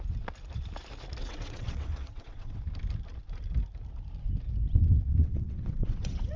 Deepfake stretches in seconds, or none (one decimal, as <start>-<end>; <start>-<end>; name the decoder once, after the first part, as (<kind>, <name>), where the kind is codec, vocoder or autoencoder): 1.2-2.6 (vocoder, WaveNeXt); 5.2-6.4